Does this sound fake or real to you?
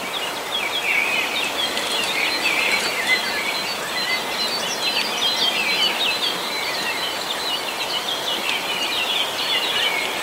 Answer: real